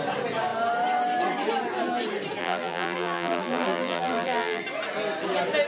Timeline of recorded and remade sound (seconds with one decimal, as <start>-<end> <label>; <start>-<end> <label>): 0.0-2.4 recorded; 2.4-4.6 remade; 4.6-5.7 recorded